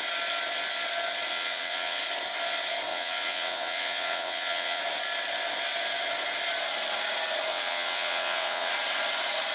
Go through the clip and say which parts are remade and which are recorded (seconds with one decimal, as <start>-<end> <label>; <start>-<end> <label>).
0.0-1.3 recorded; 1.3-2.0 remade; 2.0-2.9 recorded; 2.9-4.8 remade; 4.8-7.5 recorded; 7.5-8.7 remade; 8.7-9.5 recorded